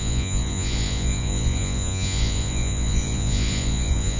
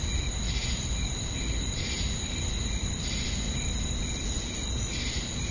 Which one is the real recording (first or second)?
second